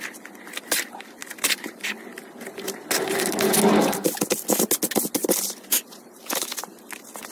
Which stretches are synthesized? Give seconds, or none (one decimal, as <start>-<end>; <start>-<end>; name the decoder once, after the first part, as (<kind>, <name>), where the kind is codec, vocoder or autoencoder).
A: 1.2-1.9 (vocoder, BigVGAN v2)